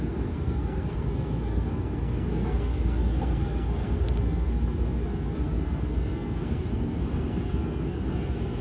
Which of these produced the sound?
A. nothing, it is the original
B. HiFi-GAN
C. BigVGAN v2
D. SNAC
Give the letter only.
D